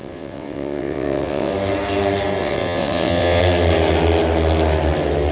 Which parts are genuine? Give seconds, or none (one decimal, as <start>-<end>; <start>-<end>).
1.5-2.4; 3.4-5.3